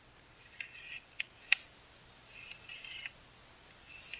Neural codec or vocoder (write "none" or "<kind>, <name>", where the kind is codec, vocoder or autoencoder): none